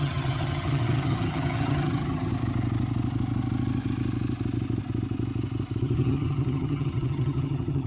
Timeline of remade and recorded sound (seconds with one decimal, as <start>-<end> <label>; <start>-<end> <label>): 0.0-2.3 remade; 2.3-5.8 recorded; 5.8-7.9 remade